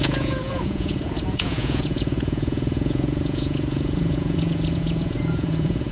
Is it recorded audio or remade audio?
remade